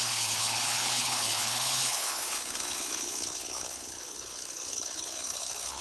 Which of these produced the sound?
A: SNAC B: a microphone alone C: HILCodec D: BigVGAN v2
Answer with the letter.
C